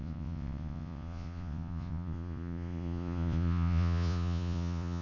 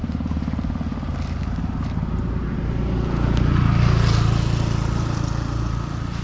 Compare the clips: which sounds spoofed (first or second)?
first